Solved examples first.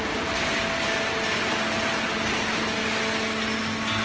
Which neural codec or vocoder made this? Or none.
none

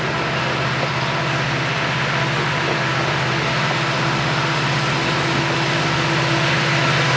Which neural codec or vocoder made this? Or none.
none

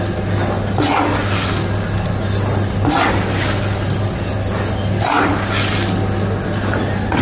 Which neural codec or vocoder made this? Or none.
none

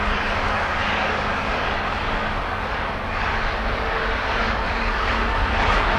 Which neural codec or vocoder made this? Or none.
codec, DAC